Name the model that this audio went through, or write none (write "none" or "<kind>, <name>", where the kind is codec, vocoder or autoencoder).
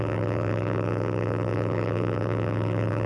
vocoder, BigVGAN v2